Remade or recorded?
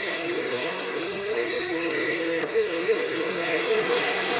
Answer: remade